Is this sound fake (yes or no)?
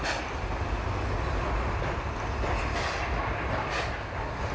no